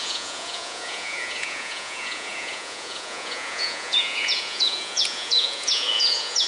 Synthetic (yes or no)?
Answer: yes